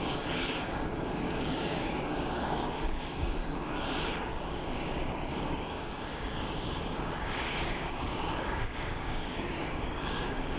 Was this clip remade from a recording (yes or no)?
yes